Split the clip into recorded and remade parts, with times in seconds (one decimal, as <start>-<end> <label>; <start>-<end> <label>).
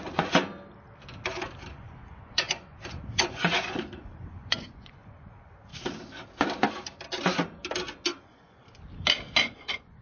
0.0-0.5 remade; 0.5-1.7 recorded; 1.7-5.7 remade; 5.7-8.2 recorded; 8.2-8.6 remade; 8.6-9.4 recorded; 9.4-10.0 remade